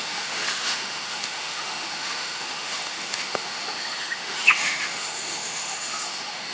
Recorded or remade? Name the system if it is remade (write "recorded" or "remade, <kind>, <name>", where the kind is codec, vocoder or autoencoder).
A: remade, autoencoder, DAC-VAE